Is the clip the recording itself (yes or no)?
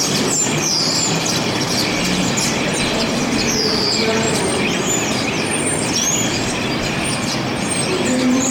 yes